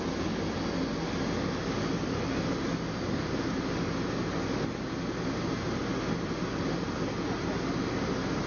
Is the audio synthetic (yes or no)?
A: no